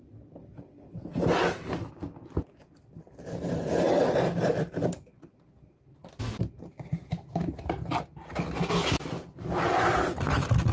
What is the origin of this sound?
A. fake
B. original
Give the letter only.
B